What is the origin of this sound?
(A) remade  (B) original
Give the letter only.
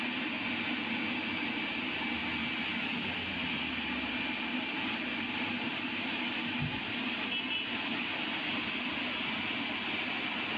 B